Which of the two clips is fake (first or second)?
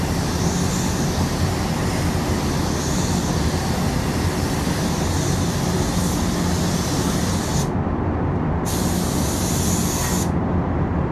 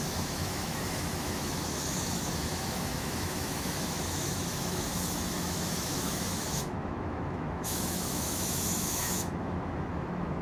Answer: second